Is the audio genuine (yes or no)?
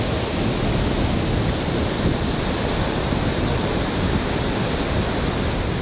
yes